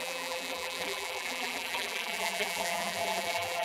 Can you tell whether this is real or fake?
fake